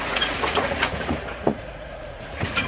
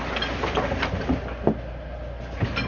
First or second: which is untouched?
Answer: second